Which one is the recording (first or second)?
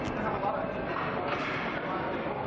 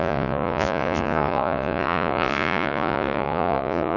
first